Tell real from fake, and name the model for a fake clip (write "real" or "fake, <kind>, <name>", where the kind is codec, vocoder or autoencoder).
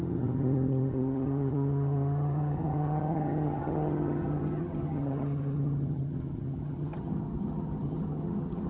fake, vocoder, HiFi-GAN